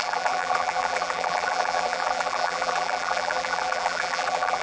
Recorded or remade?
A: remade